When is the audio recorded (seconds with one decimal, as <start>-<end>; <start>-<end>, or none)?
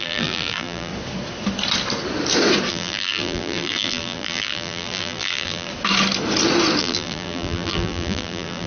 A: 0.9-2.7; 5.7-6.8